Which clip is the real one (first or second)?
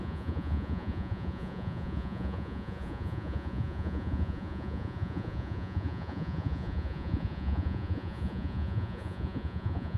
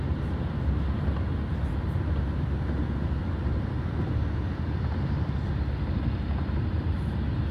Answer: second